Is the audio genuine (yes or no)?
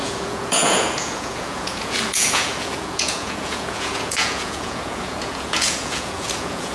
no